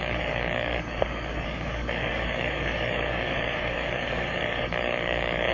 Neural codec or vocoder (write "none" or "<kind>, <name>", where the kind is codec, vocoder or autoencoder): codec, DAC